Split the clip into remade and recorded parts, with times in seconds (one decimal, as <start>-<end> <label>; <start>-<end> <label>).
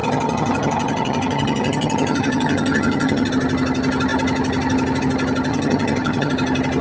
0.0-3.3 remade; 3.3-5.5 recorded; 5.5-6.3 remade; 6.3-6.8 recorded